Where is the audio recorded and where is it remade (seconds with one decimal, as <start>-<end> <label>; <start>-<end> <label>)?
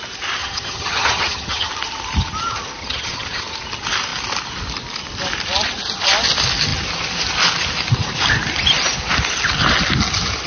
0.0-0.4 recorded; 0.4-1.7 remade; 1.7-2.8 recorded; 2.8-3.4 remade; 3.4-10.5 recorded